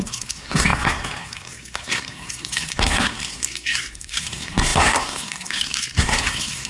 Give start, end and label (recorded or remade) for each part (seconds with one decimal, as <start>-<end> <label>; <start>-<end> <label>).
0.0-6.7 remade